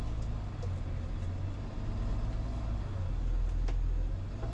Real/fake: real